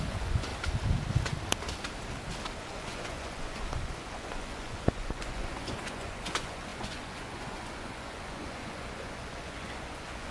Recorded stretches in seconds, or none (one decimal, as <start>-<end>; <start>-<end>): 0.5-2.6